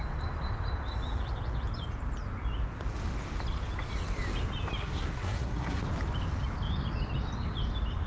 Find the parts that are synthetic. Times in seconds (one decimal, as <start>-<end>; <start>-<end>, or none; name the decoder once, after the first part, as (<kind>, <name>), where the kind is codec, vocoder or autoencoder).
4.8-5.8 (codec, SNAC)